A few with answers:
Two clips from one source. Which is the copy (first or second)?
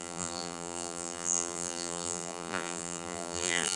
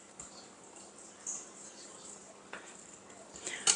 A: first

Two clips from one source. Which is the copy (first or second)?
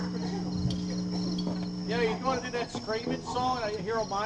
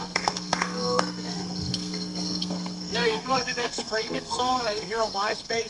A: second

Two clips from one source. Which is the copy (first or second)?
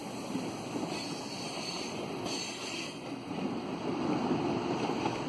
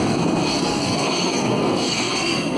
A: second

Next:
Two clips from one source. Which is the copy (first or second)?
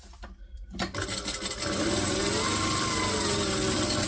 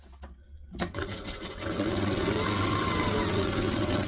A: second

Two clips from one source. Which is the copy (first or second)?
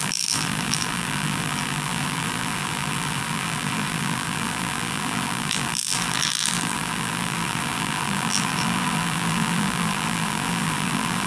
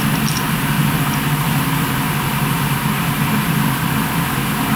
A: first